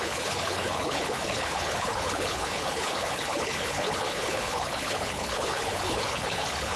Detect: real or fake fake